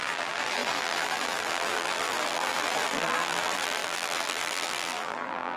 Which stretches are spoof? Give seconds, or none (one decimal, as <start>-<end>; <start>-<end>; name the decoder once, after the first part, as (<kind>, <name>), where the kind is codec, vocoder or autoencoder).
0.0-5.6 (vocoder, BigVGAN v2)